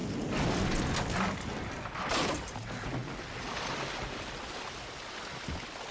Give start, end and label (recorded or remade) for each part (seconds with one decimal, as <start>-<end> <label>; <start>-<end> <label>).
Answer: 0.0-5.9 recorded